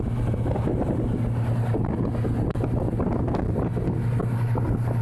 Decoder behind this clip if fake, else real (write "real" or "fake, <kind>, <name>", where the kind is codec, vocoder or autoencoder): real